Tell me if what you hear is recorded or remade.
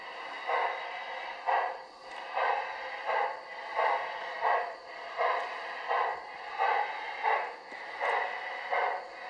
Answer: recorded